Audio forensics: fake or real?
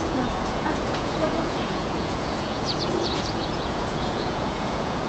fake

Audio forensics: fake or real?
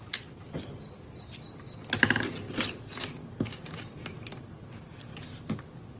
real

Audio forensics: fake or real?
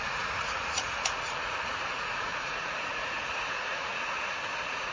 fake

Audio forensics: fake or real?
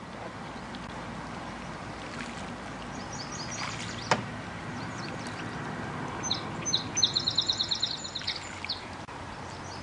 real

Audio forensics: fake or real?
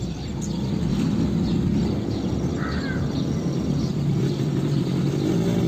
real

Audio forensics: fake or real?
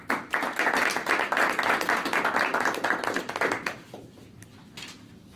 real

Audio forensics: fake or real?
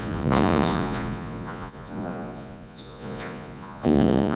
fake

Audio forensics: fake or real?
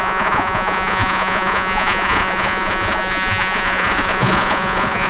fake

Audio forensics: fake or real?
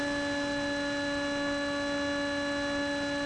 real